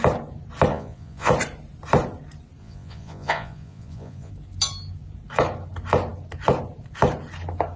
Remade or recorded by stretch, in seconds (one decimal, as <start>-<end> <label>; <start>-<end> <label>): 0.0-0.7 recorded; 0.7-1.3 remade; 1.3-2.6 recorded; 2.6-4.3 remade; 4.3-7.8 recorded